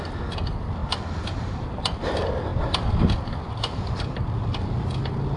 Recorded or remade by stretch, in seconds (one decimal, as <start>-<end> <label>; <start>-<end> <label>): 0.0-5.4 recorded